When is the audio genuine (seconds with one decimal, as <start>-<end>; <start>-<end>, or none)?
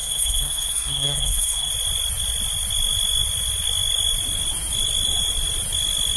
1.7-6.2